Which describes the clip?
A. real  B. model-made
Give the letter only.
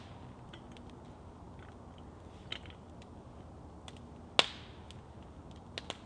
A